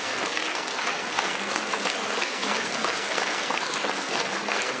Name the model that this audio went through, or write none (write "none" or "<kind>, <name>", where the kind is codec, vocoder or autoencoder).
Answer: codec, SNAC